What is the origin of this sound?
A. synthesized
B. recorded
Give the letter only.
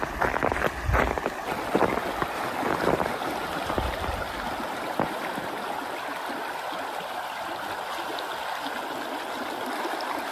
B